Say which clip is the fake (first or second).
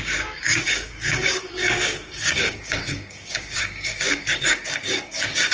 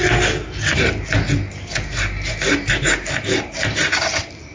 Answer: first